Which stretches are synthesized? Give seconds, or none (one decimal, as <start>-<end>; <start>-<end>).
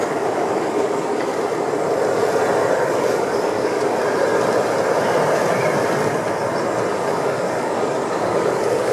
0.0-1.3; 2.8-4.0; 6.9-8.9